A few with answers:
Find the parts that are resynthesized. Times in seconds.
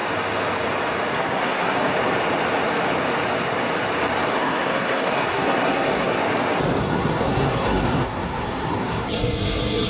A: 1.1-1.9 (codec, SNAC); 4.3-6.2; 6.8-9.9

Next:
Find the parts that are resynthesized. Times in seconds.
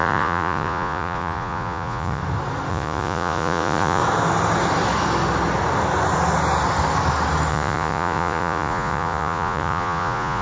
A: 0.0-2.2 (vocoder, Vocos); 2.7-4.0; 7.5-10.4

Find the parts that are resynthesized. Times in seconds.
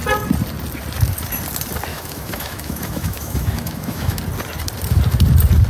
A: 1.9-4.2 (autoencoder, DAC-VAE)